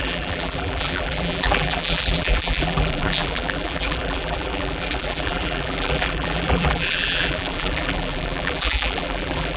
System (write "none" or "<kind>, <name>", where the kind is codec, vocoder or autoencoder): vocoder, BigVGAN v2